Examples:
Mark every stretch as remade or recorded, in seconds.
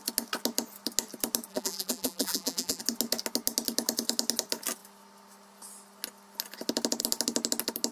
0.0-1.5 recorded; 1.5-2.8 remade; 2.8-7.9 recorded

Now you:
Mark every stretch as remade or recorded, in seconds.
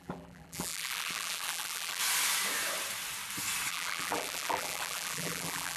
0.0-2.0 remade; 2.0-3.7 recorded; 3.7-5.8 remade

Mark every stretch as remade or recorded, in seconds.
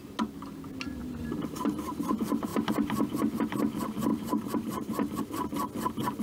0.0-1.0 recorded; 1.0-2.0 remade; 2.0-4.1 recorded; 4.1-5.2 remade; 5.2-6.2 recorded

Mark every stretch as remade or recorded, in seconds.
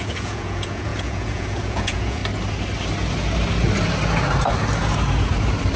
0.0-2.2 remade; 2.2-5.8 recorded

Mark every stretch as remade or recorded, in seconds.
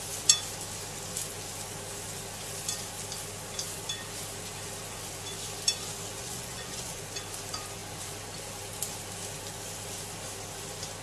0.0-6.2 recorded; 6.2-7.0 remade; 7.0-11.0 recorded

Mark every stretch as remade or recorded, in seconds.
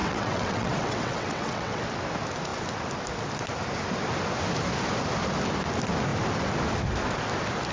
0.0-1.8 remade; 1.8-7.7 recorded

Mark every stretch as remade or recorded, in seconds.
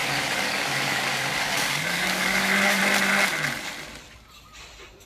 0.0-2.8 remade; 2.8-5.1 recorded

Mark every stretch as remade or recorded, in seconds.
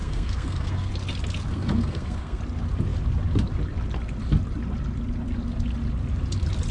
0.0-0.9 remade; 0.9-1.5 recorded; 1.5-2.4 remade; 2.4-6.7 recorded